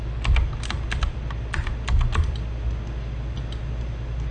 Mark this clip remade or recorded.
recorded